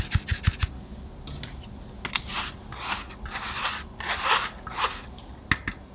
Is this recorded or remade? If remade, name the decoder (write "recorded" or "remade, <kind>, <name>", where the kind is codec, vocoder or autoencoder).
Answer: recorded